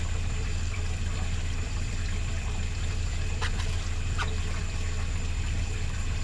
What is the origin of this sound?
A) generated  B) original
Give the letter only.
A